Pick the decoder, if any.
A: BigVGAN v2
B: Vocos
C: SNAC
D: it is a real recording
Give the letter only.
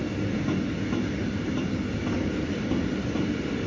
D